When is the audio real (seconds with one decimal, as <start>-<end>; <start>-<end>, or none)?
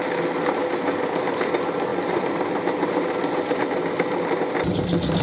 0.0-5.2